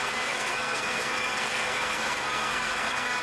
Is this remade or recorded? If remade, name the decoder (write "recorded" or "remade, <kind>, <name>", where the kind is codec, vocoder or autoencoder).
remade, codec, SNAC